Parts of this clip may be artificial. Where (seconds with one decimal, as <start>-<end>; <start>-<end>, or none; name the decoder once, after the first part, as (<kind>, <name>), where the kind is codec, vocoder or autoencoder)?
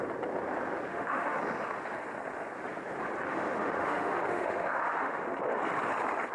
0.9-1.4 (autoencoder, DAC-VAE); 3.3-5.3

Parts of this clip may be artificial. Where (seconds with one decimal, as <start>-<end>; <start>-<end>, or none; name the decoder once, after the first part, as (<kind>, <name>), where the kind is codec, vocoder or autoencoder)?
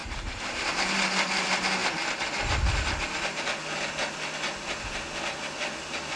0.0-0.7 (vocoder, BigVGAN v2)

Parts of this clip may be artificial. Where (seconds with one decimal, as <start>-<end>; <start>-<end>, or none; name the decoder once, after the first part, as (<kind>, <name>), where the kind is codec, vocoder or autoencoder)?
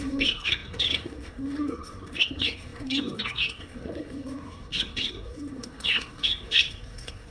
0.0-7.3 (codec, SNAC)